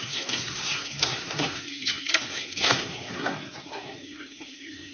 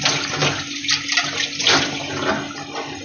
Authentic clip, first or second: second